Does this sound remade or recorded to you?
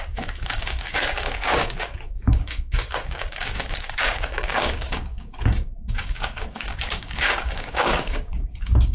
remade